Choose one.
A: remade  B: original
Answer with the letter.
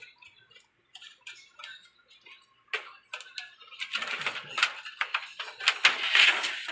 B